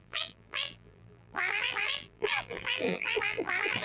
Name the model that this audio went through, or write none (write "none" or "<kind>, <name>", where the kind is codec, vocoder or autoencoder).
vocoder, BigVGAN v2